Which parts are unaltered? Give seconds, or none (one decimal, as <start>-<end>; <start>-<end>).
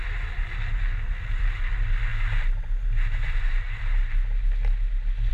0.0-5.3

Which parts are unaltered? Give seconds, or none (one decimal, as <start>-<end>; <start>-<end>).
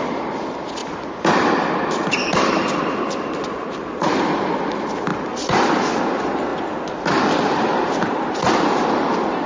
0.0-0.8; 2.8-5.1; 5.9-9.5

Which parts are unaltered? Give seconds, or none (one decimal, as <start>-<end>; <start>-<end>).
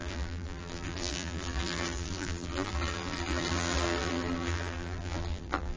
none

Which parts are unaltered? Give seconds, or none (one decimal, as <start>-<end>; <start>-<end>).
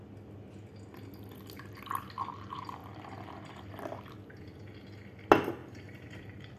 0.0-5.6